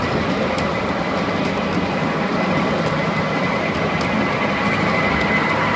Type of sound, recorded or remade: recorded